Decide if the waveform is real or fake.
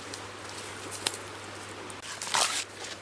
real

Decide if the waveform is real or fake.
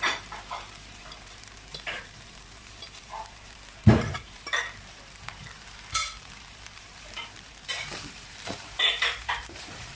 fake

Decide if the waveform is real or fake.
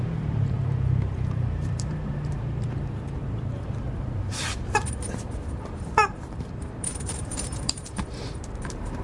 fake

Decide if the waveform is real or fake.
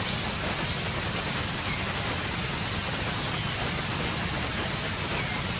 real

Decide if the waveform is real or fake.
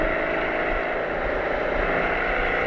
real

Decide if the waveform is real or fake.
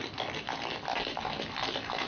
real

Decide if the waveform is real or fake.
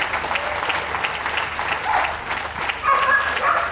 real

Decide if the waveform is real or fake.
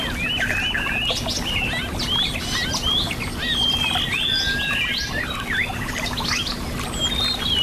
real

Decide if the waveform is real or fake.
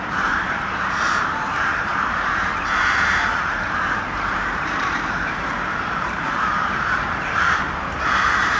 fake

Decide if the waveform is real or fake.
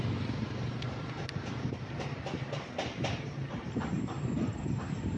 fake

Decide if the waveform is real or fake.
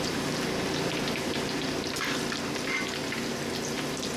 real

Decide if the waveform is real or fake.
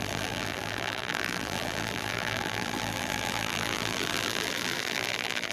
fake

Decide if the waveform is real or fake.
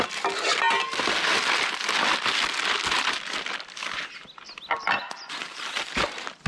real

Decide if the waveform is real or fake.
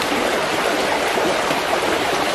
real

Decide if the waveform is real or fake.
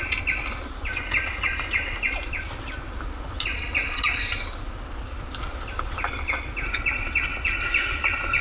fake